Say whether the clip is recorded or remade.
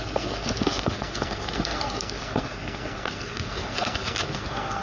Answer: remade